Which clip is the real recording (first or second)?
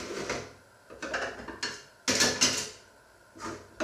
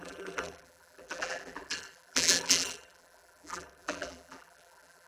first